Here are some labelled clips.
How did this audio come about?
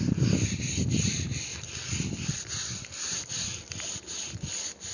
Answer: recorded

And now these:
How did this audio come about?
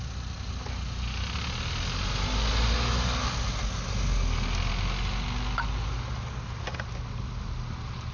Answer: recorded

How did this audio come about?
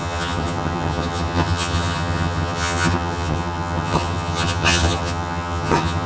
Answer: remade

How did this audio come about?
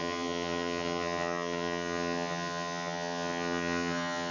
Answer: remade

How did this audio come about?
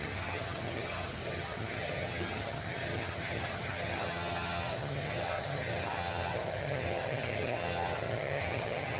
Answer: remade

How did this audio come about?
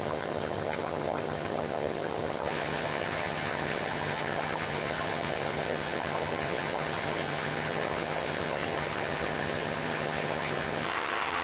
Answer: remade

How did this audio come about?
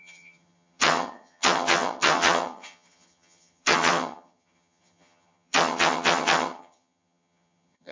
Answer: remade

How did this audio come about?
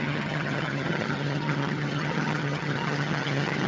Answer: remade